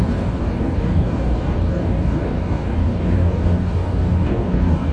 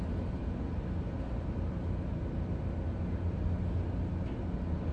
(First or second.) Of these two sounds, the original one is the second